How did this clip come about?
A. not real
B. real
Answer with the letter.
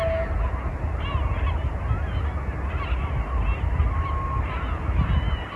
B